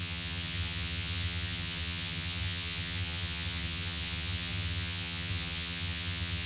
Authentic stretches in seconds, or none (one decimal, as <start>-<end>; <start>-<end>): none